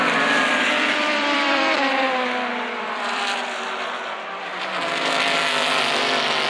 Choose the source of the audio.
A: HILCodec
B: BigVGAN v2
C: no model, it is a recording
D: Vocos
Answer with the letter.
B